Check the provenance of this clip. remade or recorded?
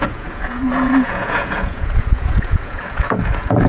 remade